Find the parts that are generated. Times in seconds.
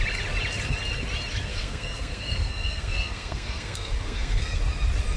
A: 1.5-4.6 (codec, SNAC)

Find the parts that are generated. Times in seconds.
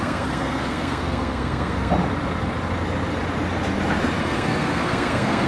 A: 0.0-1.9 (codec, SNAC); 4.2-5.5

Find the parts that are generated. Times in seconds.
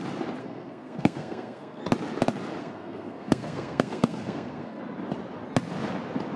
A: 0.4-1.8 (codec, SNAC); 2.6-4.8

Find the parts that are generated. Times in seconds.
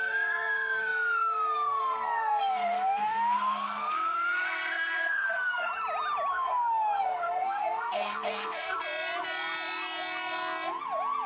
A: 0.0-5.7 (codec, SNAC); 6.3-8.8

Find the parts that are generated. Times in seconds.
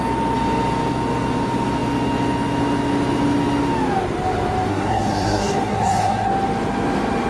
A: 4.7-6.3 (codec, SNAC)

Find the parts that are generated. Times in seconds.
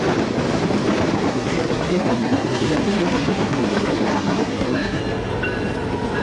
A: 1.3-5.0 (codec, SNAC)